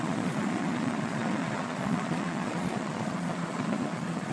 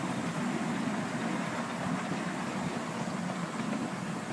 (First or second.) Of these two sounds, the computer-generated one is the first